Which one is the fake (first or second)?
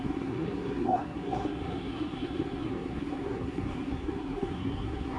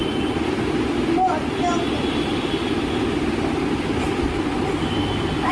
first